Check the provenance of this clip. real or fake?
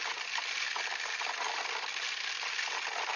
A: real